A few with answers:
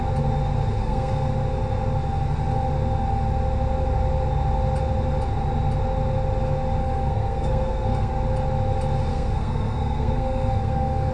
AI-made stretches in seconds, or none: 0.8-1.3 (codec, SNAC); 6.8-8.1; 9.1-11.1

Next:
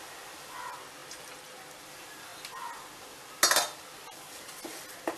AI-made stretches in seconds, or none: none

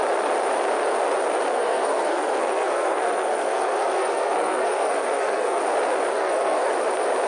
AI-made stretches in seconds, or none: 1.5-5.6 (codec, SNAC); 6.1-6.7